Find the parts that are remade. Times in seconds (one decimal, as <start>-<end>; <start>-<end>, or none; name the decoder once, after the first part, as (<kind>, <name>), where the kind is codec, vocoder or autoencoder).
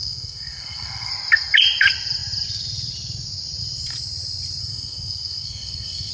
0.0-1.1 (codec, SNAC); 4.6-6.1